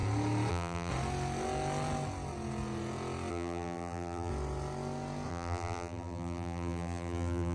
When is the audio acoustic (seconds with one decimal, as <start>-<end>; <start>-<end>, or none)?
0.0-0.5; 0.9-3.3; 4.3-5.3